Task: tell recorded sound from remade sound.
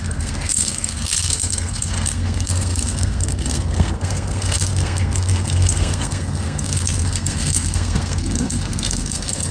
remade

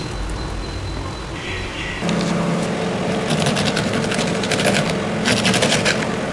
recorded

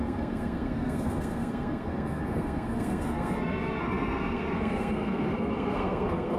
remade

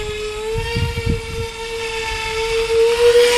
recorded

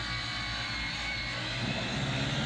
recorded